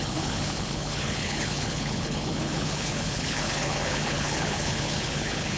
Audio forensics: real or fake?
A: fake